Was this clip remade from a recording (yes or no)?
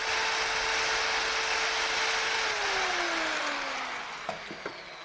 no